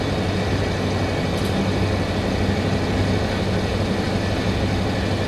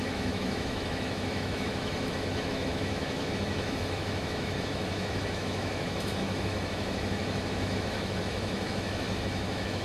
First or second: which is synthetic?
second